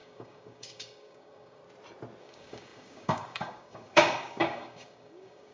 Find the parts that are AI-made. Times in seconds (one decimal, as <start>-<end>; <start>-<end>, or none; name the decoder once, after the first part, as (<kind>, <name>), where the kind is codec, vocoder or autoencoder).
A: 0.0-1.6 (codec, DAC); 2.2-5.5